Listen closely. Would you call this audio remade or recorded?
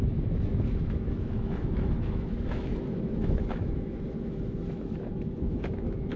remade